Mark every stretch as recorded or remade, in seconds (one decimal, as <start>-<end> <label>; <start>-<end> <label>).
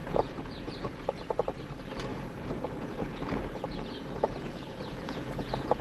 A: 0.0-1.1 remade; 1.1-2.1 recorded; 2.1-5.8 remade